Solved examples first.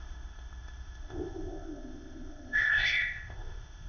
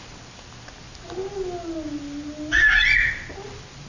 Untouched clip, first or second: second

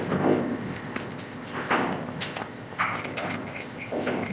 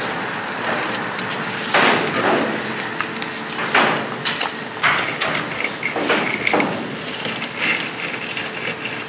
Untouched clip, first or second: second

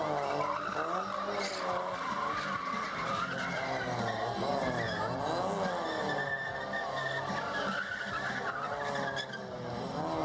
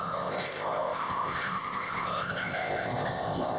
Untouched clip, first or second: first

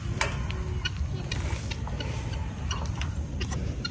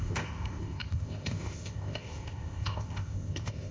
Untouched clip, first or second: first